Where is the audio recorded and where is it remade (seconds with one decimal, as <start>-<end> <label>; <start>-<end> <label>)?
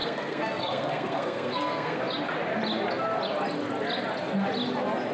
0.0-2.0 remade; 2.0-5.1 recorded